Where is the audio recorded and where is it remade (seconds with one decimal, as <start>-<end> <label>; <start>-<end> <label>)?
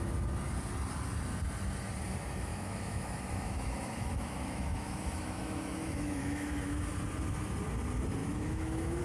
0.0-2.5 recorded; 2.5-6.9 remade; 6.9-8.2 recorded; 8.2-9.0 remade